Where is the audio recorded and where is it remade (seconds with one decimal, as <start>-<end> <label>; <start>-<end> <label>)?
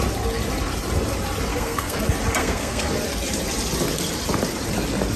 0.0-1.5 recorded; 1.5-2.0 remade; 2.0-2.4 recorded; 2.4-2.9 remade; 2.9-5.2 recorded